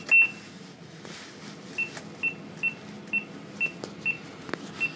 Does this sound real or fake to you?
real